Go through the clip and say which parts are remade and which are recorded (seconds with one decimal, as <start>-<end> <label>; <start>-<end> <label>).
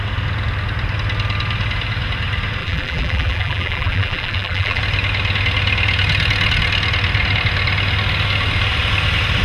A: 0.0-2.6 recorded; 2.6-4.8 remade; 4.8-9.4 recorded